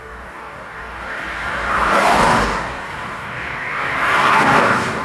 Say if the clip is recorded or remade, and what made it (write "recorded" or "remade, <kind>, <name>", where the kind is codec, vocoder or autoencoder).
remade, codec, DAC